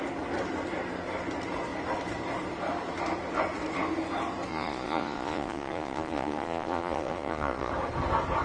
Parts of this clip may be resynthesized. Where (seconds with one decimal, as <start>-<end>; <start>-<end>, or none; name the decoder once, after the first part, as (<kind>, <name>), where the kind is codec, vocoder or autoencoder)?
4.5-7.7 (vocoder, Vocos)